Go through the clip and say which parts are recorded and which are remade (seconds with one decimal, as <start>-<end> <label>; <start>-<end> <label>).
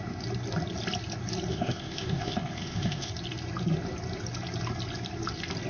0.0-1.5 recorded; 1.5-3.1 remade; 3.1-5.7 recorded